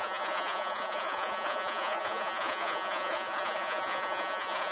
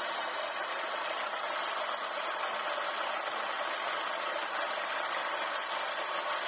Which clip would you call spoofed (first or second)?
first